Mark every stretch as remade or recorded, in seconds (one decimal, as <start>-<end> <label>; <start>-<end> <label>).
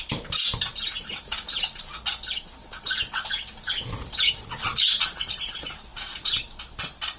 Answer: 0.0-7.2 recorded